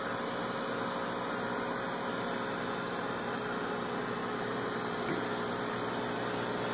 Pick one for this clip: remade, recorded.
remade